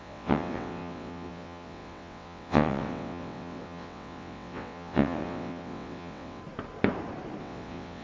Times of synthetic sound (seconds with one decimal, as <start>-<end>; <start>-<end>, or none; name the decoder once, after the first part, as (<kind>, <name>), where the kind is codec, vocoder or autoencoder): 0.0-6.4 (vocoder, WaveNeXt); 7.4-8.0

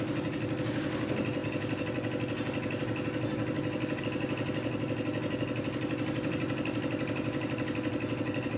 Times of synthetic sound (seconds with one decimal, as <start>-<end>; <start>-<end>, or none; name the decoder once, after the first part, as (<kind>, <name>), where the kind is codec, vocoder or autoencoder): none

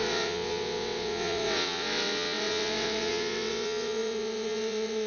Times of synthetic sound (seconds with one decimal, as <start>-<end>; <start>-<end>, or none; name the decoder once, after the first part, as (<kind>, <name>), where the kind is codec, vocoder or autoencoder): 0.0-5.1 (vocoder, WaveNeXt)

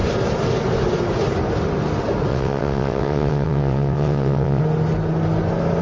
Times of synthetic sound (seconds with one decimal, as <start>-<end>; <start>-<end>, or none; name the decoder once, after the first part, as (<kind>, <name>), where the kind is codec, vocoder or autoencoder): 2.3-4.6 (vocoder, WaveNeXt)

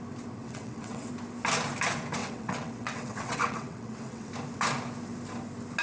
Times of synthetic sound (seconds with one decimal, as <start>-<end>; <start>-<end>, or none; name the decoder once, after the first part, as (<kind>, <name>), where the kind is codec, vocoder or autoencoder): 0.4-1.1 (vocoder, WaveNeXt); 2.2-4.3

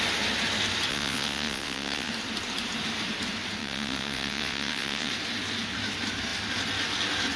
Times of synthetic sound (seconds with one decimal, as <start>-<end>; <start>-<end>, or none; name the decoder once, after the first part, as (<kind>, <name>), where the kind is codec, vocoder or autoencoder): 0.9-2.1 (vocoder, WaveNeXt); 3.6-5.1

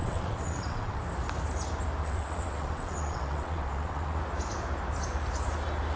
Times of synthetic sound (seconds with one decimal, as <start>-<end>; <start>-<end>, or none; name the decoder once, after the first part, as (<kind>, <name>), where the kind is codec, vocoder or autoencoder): 0.0-1.0 (vocoder, WaveNeXt); 2.0-4.2

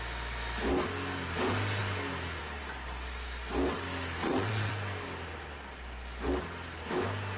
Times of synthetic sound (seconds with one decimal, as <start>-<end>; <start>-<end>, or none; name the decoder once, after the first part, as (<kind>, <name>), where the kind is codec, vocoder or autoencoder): 4.2-4.7 (vocoder, WaveNeXt)